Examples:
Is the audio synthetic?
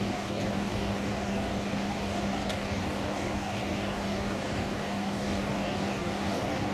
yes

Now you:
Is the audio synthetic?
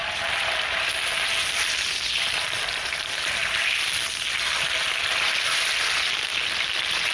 no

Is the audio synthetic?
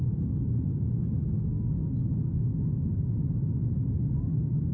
no